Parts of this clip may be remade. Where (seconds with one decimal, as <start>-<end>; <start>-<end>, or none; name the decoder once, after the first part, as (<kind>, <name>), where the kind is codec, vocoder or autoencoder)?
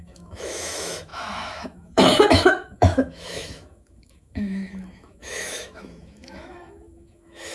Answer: 0.0-7.5 (autoencoder, DAC-VAE)